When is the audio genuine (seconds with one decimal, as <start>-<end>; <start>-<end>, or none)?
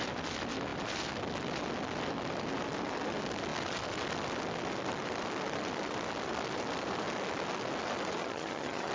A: 0.0-8.2